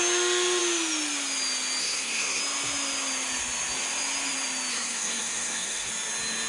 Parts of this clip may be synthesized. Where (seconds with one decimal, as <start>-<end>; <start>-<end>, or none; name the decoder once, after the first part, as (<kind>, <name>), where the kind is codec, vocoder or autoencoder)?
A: 1.8-2.4 (codec, SNAC); 4.7-5.9

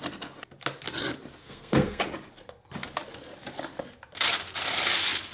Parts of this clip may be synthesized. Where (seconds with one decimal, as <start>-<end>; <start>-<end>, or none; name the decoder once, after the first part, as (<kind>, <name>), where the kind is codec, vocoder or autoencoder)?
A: 1.4-2.0 (codec, SNAC)

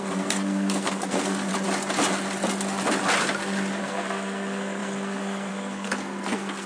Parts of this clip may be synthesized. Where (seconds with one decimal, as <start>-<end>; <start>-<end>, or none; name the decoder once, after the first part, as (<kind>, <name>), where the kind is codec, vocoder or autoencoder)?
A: 0.0-1.5 (codec, SNAC); 3.8-6.7

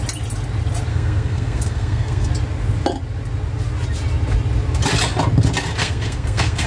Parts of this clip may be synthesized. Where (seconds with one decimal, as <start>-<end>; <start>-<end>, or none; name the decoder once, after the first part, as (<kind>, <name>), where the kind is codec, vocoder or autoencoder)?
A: 0.9-2.3 (codec, SNAC); 5.8-6.7

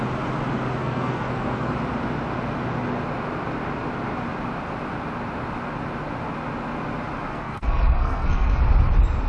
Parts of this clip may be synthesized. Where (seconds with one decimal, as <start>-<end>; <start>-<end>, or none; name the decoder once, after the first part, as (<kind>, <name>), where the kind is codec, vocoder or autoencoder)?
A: 0.8-1.7 (codec, SNAC); 7.3-8.6

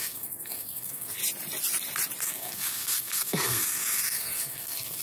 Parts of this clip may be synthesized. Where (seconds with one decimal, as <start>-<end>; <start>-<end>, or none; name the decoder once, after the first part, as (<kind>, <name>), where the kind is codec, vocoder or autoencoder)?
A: 0.0-1.2 (codec, SNAC); 2.2-5.0